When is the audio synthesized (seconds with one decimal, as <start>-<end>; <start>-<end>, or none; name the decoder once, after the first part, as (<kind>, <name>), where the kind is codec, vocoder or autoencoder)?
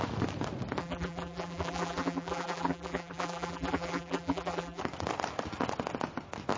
0.8-4.8 (vocoder, BigVGAN v2)